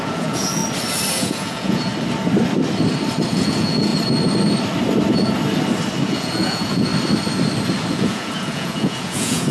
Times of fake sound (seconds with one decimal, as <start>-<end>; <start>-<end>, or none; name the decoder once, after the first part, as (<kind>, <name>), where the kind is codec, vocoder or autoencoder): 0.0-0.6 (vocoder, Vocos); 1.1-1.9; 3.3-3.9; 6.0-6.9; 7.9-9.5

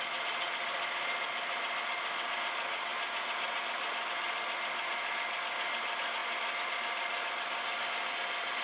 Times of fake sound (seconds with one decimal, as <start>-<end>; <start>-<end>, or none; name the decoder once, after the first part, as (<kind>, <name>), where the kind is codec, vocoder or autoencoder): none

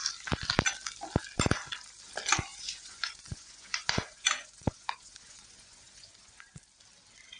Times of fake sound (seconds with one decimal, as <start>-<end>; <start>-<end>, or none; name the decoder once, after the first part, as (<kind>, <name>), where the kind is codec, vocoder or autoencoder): 2.5-6.6 (vocoder, Vocos)

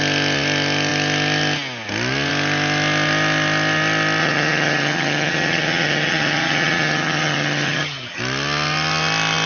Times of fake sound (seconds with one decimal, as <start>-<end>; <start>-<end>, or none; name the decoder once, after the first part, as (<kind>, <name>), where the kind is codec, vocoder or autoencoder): 4.2-8.2 (vocoder, HiFi-GAN)

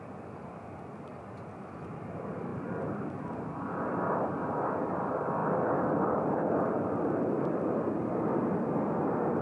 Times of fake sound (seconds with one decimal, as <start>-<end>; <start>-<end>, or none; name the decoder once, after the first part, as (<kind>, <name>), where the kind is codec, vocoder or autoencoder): 2.5-3.4 (vocoder, BigVGAN v2); 5.4-8.1

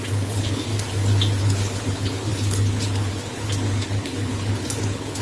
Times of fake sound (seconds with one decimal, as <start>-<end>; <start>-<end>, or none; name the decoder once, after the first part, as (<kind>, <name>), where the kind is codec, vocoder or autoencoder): 0.0-0.7 (codec, HILCodec); 1.4-5.2

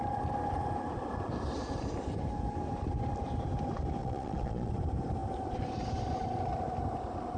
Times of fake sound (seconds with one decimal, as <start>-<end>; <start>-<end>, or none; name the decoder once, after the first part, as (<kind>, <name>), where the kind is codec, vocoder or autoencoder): 4.0-4.7 (vocoder, Vocos)